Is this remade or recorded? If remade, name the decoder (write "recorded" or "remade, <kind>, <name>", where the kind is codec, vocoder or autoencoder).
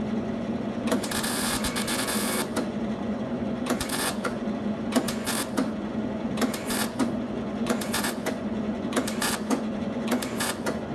remade, vocoder, Vocos